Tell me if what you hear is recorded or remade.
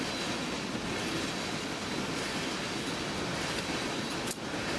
recorded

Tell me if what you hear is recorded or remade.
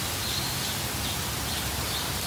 recorded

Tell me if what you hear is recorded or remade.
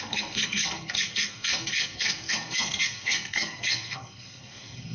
remade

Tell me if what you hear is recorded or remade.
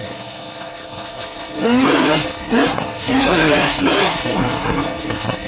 remade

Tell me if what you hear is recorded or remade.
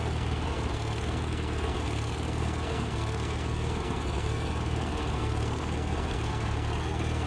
remade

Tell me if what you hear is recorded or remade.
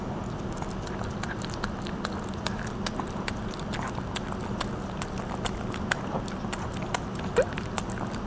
recorded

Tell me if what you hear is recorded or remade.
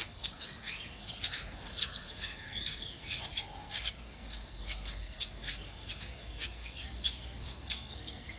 remade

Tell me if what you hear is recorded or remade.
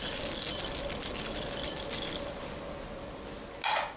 recorded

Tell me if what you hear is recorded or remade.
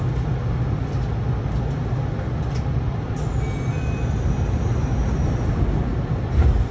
recorded